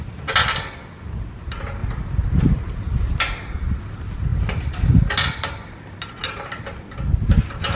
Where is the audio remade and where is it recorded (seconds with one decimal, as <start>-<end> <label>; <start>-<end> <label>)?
0.0-7.8 recorded